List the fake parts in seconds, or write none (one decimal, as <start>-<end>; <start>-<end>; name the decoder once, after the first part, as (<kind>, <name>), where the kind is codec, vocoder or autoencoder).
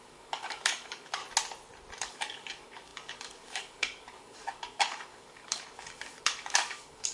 0.0-1.2 (codec, DAC); 2.0-7.1